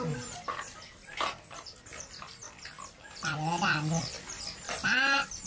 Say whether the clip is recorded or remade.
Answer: remade